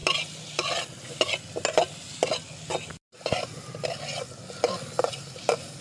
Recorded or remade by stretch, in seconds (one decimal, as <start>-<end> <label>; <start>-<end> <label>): 0.0-5.8 recorded